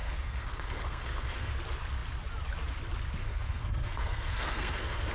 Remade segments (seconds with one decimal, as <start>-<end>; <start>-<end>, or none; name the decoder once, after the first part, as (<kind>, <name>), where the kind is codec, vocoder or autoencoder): 0.0-1.5 (codec, SNAC); 3.2-5.1